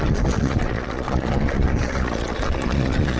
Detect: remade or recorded remade